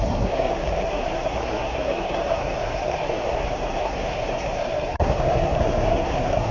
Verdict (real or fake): fake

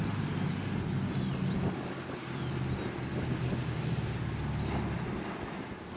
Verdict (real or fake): real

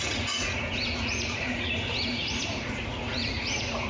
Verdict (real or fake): fake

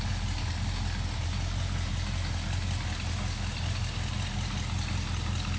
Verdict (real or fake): real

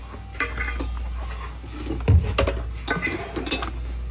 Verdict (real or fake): real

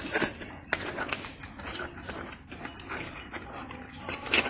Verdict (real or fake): real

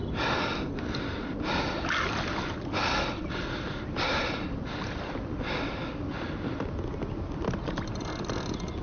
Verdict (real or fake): real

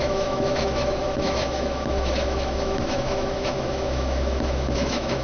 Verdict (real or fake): fake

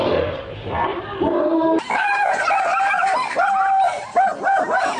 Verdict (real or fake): fake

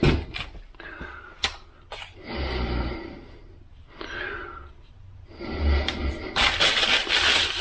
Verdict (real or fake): real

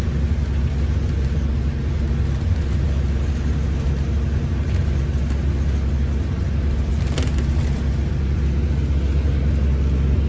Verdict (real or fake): real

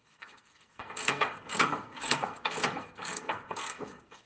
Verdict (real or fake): fake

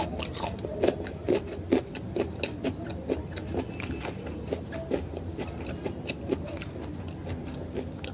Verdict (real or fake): real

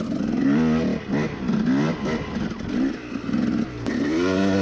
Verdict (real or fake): real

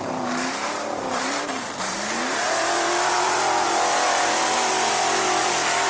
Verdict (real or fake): fake